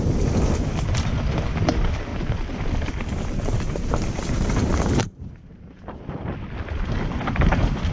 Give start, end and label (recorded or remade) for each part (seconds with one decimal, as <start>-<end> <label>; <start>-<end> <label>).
0.0-2.1 recorded; 2.1-6.0 remade; 6.0-7.9 recorded